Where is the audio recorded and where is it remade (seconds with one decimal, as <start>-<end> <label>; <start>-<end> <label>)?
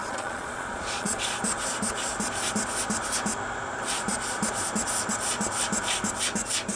0.0-1.2 remade; 1.2-6.8 recorded